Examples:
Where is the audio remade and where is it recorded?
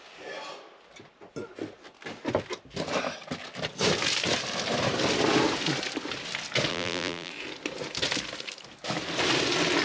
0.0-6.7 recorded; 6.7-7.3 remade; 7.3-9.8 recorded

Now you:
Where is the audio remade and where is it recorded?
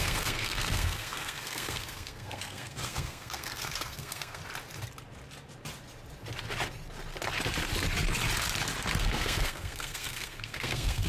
0.0-4.4 remade; 4.4-9.0 recorded; 9.0-11.1 remade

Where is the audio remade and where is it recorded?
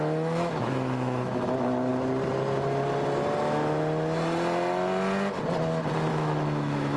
0.0-1.9 remade; 1.9-6.1 recorded; 6.1-7.0 remade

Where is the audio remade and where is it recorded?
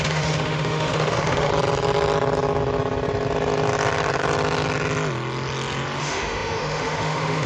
0.0-1.5 remade; 1.5-6.0 recorded; 6.0-7.5 remade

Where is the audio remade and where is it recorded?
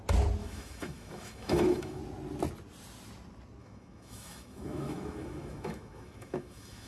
0.0-0.4 recorded; 0.4-2.0 remade; 2.0-3.6 recorded; 3.6-6.9 remade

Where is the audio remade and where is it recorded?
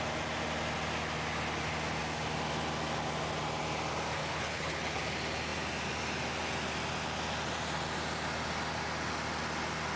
0.0-4.2 recorded; 4.2-5.0 remade; 5.0-10.0 recorded